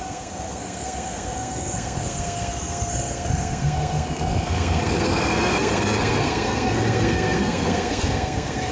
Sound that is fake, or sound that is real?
fake